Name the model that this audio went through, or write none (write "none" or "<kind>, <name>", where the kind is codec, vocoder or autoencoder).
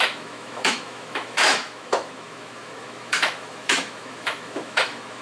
autoencoder, DAC-VAE